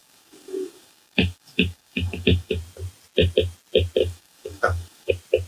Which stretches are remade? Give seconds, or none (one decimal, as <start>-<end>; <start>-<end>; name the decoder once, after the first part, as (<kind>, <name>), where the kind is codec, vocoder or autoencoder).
0.0-2.6 (codec, DAC); 4.0-5.1